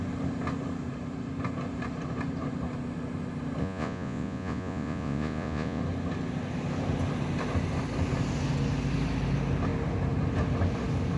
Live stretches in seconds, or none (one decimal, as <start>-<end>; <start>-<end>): 0.0-3.6; 5.8-11.2